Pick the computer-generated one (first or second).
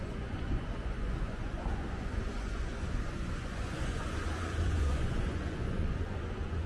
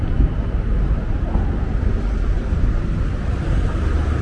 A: first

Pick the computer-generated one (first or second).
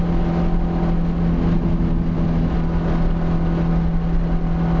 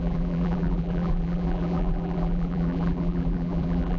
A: second